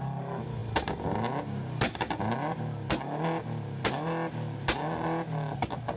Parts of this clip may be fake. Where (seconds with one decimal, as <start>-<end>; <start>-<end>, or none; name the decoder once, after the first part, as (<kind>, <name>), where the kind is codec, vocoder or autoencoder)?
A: none